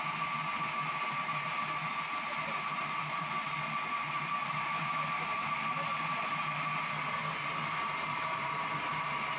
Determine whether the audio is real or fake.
real